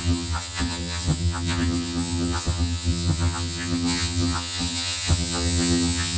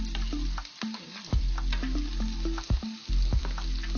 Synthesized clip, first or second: first